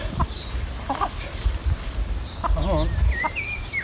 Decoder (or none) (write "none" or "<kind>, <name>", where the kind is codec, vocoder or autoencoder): none